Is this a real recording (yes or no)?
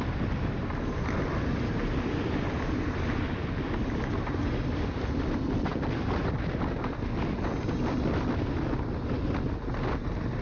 yes